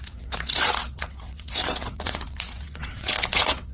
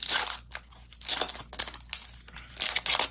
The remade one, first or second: first